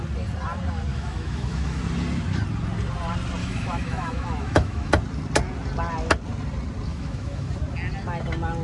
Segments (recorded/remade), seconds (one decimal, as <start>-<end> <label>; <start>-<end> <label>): 0.0-0.9 recorded; 0.9-1.8 remade; 1.8-3.4 recorded; 3.4-4.9 remade; 4.9-6.9 recorded; 6.9-7.5 remade; 7.5-8.6 recorded